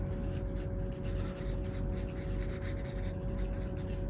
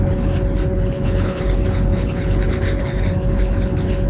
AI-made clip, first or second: second